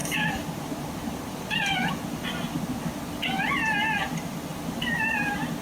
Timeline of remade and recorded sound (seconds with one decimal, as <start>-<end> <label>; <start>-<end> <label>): 0.0-5.6 recorded